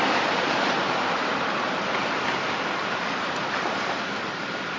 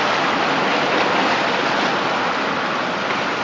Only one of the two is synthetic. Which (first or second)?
first